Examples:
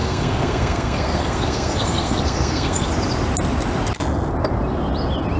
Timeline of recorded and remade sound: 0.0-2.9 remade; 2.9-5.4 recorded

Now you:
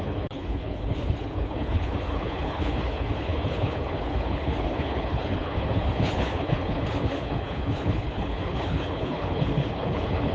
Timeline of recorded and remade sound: 0.0-10.3 remade

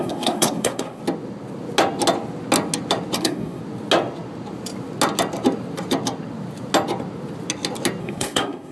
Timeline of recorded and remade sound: 0.0-1.0 remade; 1.0-3.2 recorded; 3.2-3.6 remade; 3.6-8.0 recorded; 8.0-8.7 remade

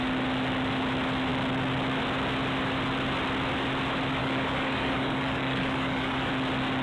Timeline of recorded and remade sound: 0.0-4.2 recorded; 4.2-6.3 remade; 6.3-6.8 recorded

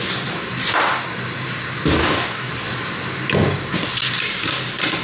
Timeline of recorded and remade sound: 0.0-2.0 recorded; 2.0-2.5 remade; 2.5-5.0 recorded

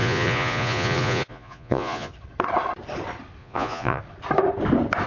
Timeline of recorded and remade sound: 0.0-2.1 remade; 2.1-3.4 recorded; 3.4-4.0 remade; 4.0-5.1 recorded

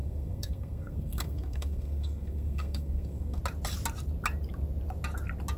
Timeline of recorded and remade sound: 0.0-3.4 remade; 3.4-5.6 recorded

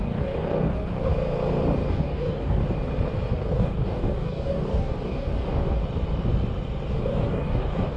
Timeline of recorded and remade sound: 0.0-1.1 remade; 1.1-1.9 recorded; 1.9-2.6 remade; 2.6-3.3 recorded; 3.3-5.8 remade; 5.8-6.9 recorded; 6.9-8.0 remade